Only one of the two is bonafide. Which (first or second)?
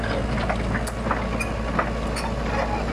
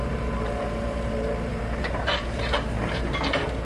first